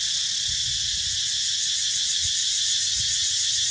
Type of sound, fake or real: real